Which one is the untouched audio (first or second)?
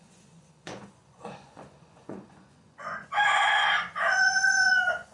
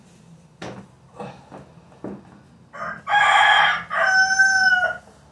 second